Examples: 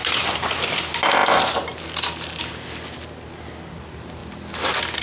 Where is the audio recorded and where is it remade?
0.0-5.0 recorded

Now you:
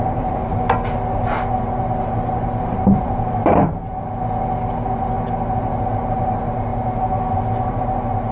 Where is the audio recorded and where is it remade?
0.0-0.5 remade; 0.5-1.7 recorded; 1.7-3.4 remade; 3.4-5.6 recorded; 5.6-6.7 remade; 6.7-7.6 recorded; 7.6-8.3 remade

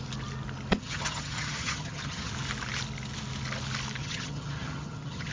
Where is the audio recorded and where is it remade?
0.0-0.7 recorded; 0.7-2.3 remade; 2.3-4.0 recorded; 4.0-5.3 remade